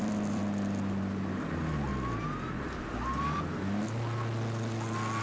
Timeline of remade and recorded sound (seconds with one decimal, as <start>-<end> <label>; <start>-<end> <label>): 0.0-0.4 remade; 0.4-1.5 recorded; 1.5-1.9 remade; 1.9-5.2 recorded